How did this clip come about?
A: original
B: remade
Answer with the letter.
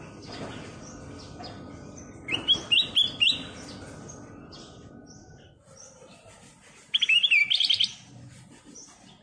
A